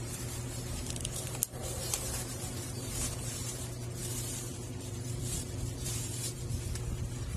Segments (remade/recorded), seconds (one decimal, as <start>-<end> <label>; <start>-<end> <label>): 0.0-7.4 remade